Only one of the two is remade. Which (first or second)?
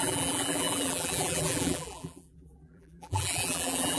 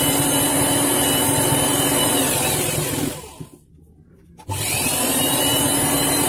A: first